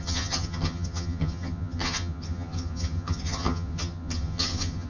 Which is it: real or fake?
fake